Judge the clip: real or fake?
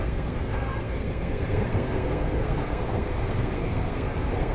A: fake